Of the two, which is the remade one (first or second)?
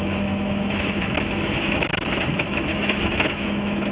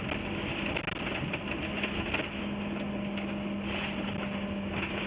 first